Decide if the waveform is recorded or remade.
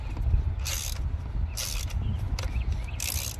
recorded